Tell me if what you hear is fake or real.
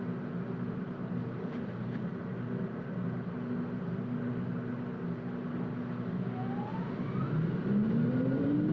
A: real